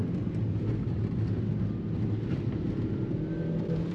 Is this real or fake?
real